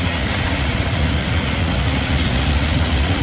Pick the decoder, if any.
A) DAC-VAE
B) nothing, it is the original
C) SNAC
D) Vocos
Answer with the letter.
D